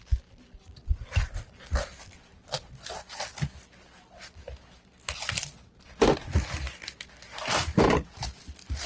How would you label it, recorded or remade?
recorded